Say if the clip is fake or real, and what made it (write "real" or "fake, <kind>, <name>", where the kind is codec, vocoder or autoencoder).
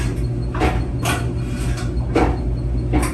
real